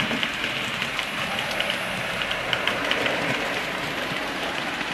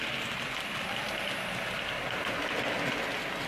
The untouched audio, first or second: second